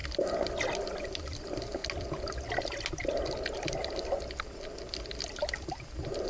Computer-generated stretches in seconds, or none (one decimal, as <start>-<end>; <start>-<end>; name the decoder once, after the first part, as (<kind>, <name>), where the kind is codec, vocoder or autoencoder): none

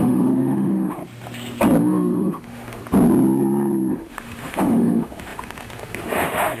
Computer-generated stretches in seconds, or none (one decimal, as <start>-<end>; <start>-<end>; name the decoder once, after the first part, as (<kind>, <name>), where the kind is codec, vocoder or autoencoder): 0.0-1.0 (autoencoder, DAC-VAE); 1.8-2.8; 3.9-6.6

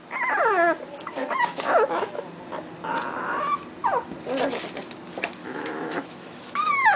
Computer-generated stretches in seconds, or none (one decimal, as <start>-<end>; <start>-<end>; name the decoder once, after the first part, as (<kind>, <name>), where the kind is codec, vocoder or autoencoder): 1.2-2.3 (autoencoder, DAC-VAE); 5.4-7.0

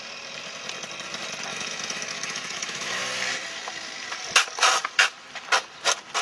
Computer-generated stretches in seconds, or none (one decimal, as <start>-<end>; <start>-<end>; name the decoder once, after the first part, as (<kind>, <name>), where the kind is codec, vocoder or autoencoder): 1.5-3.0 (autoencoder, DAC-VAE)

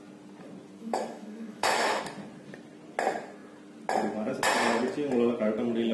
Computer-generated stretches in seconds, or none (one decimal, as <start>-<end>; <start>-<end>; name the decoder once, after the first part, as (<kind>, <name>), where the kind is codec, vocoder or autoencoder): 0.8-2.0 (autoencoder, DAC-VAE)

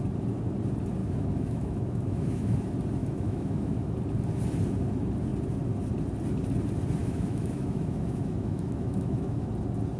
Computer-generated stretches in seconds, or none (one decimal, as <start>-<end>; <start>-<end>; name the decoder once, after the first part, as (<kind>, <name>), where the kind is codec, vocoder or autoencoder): 1.0-2.6 (autoencoder, DAC-VAE); 3.0-4.0; 7.0-9.5

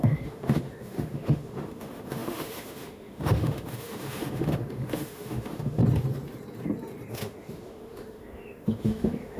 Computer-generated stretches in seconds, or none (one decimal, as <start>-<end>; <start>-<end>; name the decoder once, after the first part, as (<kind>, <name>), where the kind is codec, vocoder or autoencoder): 0.0-5.8 (autoencoder, DAC-VAE); 7.1-9.4